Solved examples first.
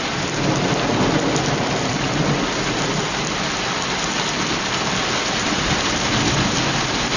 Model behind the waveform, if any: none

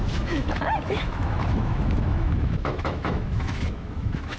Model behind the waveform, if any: autoencoder, DAC-VAE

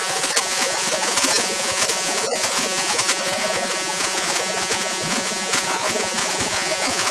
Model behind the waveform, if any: vocoder, Vocos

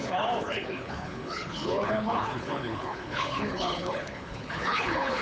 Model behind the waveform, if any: codec, HILCodec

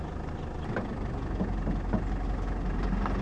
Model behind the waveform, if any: none